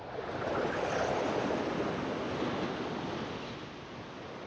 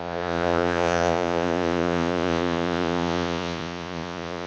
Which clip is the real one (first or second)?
first